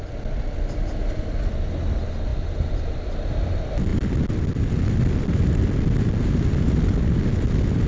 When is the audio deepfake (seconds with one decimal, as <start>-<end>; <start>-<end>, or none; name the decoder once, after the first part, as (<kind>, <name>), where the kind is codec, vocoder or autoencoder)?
none